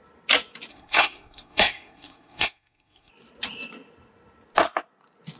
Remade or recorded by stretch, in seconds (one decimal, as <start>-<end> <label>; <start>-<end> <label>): 0.0-0.7 recorded; 0.7-3.1 remade; 3.1-5.4 recorded